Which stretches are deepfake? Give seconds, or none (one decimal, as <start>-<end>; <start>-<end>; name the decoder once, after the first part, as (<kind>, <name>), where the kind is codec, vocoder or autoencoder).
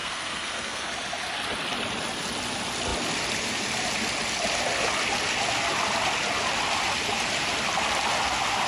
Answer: 0.0-0.9 (codec, SNAC)